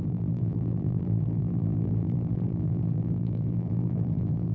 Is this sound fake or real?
fake